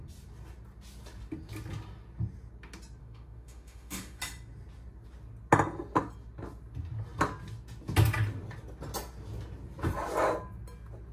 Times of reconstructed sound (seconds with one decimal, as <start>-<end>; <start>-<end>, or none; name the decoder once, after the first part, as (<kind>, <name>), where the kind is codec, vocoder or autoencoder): 3.0-4.2 (autoencoder, DAC-VAE)